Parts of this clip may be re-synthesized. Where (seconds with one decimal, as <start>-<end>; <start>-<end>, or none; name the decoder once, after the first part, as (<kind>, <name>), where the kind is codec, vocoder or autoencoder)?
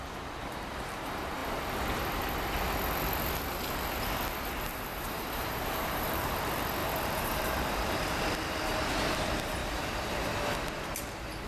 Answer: 4.9-6.3 (vocoder, BigVGAN v2); 6.8-8.2